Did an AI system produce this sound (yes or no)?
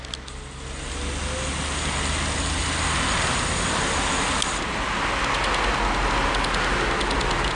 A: no